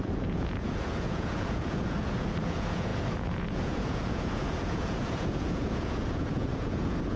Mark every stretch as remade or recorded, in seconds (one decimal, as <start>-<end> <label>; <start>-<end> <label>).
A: 0.0-7.2 remade